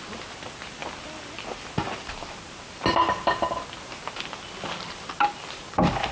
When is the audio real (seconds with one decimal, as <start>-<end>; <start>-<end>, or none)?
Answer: 0.0-6.1